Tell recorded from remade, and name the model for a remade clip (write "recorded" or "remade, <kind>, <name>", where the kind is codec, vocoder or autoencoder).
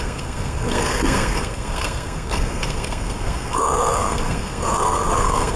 remade, codec, SNAC